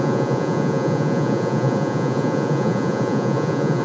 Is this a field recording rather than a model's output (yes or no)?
no